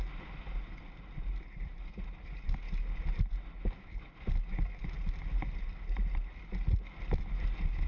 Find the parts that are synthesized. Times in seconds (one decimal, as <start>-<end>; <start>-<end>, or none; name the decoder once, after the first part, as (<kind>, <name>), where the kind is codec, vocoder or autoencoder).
none